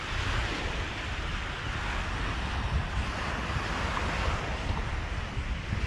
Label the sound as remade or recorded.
recorded